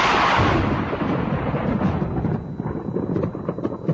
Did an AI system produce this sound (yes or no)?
no